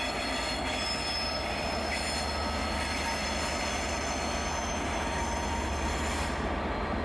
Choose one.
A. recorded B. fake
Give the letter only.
A